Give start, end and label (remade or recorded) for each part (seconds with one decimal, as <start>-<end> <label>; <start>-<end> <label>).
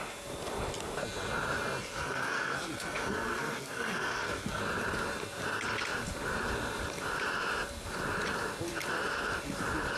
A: 0.0-1.8 recorded; 1.8-4.6 remade; 4.6-10.0 recorded